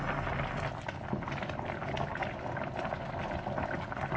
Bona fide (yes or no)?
yes